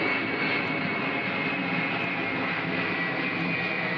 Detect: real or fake real